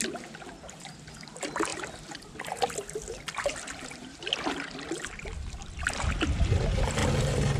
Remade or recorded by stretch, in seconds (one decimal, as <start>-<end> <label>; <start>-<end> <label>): 0.0-5.6 recorded; 5.6-6.1 remade; 6.1-7.6 recorded